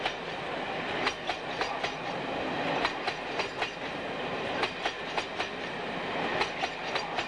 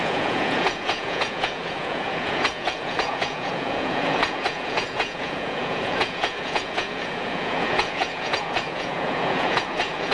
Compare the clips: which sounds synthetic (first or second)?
second